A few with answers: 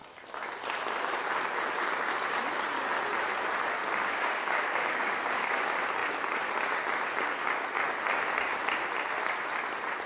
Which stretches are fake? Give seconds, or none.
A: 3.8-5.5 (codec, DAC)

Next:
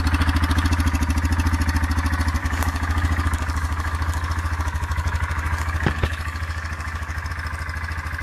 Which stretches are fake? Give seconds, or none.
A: 2.4-7.3 (codec, DAC)

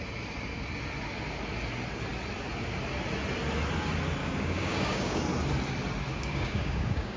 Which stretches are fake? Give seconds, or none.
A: 4.2-5.2 (codec, DAC); 6.1-7.2

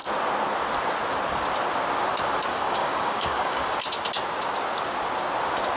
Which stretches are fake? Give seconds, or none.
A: 2.5-3.7 (codec, DAC)